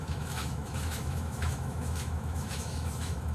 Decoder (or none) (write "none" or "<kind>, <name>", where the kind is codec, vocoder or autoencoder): autoencoder, DAC-VAE